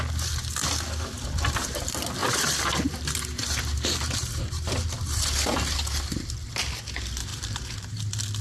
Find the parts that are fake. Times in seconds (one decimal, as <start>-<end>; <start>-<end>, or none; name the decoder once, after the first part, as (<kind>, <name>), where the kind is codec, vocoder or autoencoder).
2.2-4.7 (vocoder, BigVGAN v2); 7.3-8.0